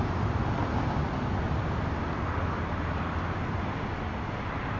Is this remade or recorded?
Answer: recorded